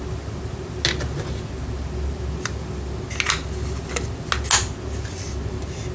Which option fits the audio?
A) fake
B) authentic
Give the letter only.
B